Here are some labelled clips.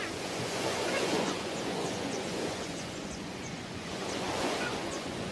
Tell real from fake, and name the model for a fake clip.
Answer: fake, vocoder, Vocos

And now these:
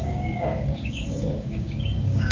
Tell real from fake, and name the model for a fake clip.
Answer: fake, codec, DAC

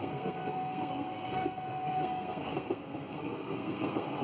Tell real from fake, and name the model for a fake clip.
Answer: fake, codec, SNAC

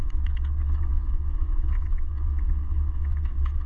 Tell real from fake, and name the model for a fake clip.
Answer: fake, vocoder, WaveNeXt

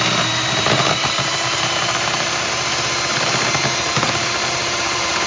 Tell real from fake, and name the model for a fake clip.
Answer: fake, vocoder, BigVGAN v2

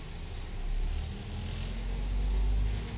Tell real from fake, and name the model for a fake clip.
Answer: real